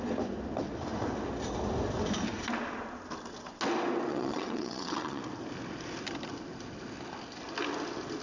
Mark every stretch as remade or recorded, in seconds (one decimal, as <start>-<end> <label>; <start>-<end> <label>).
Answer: 0.0-4.1 recorded; 4.1-5.2 remade; 5.2-8.2 recorded